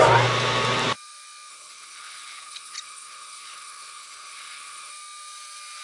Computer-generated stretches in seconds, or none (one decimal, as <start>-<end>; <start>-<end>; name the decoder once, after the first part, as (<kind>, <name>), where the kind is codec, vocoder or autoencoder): 1.5-4.9 (codec, HILCodec)